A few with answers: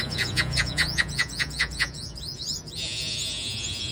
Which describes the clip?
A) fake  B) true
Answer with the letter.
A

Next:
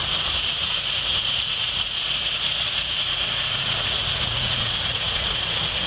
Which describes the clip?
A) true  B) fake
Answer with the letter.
B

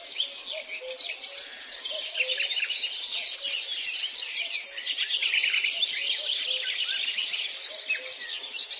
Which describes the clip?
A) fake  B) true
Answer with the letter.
B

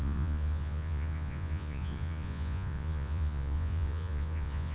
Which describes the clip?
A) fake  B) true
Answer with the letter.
A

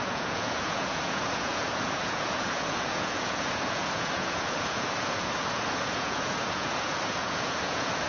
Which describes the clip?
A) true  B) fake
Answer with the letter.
B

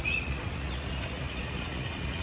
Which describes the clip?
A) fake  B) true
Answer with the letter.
A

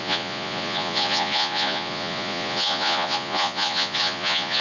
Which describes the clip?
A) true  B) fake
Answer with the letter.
B